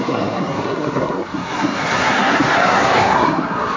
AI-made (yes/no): yes